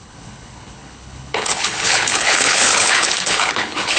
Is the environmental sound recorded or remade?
remade